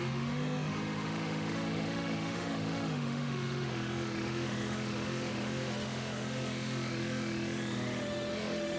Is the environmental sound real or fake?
fake